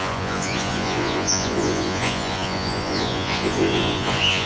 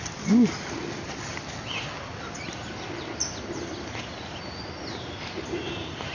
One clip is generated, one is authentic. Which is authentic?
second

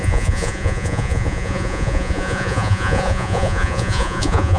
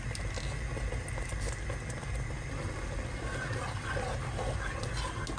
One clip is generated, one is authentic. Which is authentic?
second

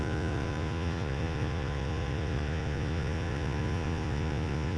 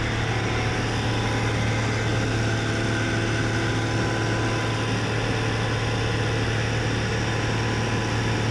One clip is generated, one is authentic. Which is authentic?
second